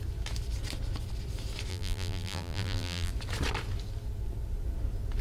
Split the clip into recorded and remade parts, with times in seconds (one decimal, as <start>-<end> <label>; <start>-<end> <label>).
0.0-1.7 recorded; 1.7-3.1 remade; 3.1-5.2 recorded